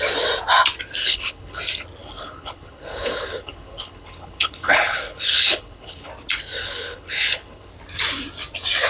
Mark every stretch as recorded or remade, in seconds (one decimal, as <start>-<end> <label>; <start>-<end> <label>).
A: 0.0-1.0 recorded; 1.0-1.6 remade; 1.6-2.0 recorded; 2.0-6.1 remade; 6.1-6.6 recorded; 6.6-7.7 remade; 7.7-8.9 recorded